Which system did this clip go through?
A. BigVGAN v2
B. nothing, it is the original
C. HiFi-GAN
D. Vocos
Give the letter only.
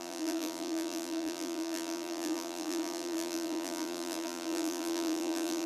A